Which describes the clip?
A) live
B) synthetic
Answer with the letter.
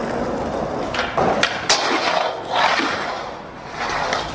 A